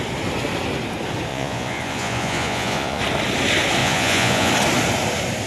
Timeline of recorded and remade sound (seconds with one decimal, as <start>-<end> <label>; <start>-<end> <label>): 0.0-1.3 recorded; 1.3-3.0 remade; 3.0-3.8 recorded; 3.8-4.5 remade; 4.5-5.5 recorded

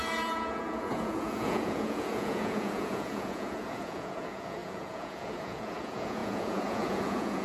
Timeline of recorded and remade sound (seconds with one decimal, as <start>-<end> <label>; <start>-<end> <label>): 0.0-7.4 remade

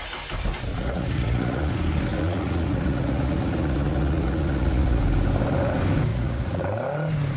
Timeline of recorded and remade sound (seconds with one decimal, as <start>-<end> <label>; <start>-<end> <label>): 0.0-0.7 recorded; 0.7-1.7 remade; 1.7-2.1 recorded; 2.1-5.0 remade; 5.0-6.1 recorded; 6.1-6.6 remade; 6.6-7.4 recorded

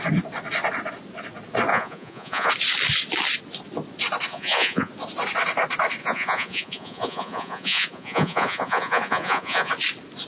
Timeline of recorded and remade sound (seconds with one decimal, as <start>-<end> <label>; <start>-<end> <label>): 0.0-1.7 recorded; 1.7-2.5 remade; 2.5-4.3 recorded; 4.3-4.9 remade; 4.9-6.0 recorded; 6.0-9.7 remade; 9.7-10.3 recorded

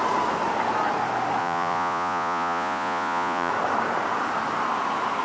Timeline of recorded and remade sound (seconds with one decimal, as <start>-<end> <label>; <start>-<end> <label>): 0.0-1.4 recorded; 1.4-3.5 remade; 3.5-5.2 recorded

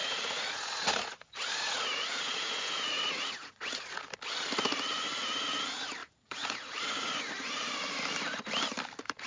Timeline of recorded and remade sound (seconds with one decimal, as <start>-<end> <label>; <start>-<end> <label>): 0.0-4.1 remade; 4.1-6.0 recorded; 6.0-7.2 remade; 7.2-9.3 recorded

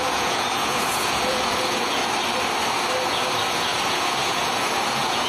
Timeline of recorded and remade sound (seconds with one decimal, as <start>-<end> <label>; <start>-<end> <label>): 0.0-2.0 remade; 2.0-3.0 recorded; 3.0-5.3 remade